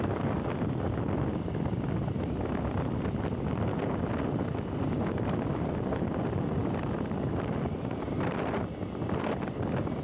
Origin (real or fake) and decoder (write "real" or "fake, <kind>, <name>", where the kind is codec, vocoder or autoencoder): real